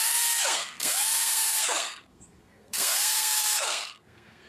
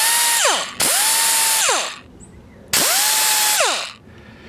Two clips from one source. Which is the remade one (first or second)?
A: first